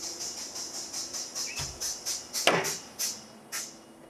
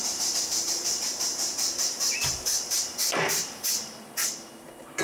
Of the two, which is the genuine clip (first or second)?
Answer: first